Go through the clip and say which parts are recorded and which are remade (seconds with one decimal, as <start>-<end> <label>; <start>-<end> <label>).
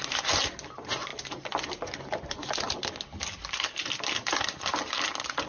0.0-5.5 recorded